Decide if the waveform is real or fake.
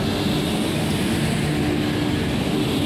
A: real